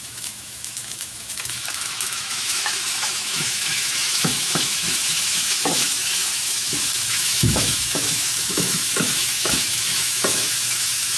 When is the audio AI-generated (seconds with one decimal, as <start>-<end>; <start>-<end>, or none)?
0.0-11.2